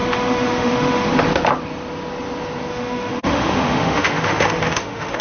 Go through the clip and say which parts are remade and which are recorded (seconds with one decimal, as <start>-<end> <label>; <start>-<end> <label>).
0.0-1.1 remade; 1.1-2.7 recorded; 2.7-5.2 remade